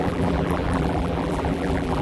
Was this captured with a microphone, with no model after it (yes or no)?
no